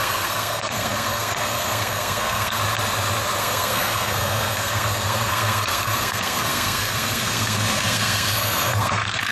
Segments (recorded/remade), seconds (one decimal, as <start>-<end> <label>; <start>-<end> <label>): 0.0-2.6 remade; 2.6-3.4 recorded; 3.4-9.3 remade